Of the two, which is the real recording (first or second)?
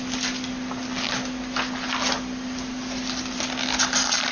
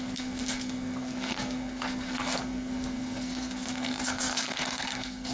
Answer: first